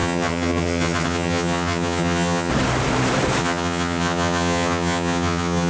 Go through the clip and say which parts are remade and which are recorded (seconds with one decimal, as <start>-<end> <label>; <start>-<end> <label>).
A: 0.0-2.5 remade; 2.5-3.4 recorded; 3.4-5.7 remade